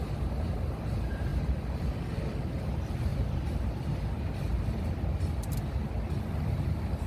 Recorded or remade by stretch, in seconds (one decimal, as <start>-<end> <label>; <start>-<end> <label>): 0.0-7.1 recorded